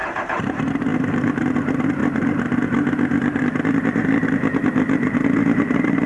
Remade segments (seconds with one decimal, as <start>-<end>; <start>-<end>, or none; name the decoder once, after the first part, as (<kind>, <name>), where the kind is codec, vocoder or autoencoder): 0.0-0.5 (vocoder, BigVGAN v2); 0.9-1.5; 2.0-6.1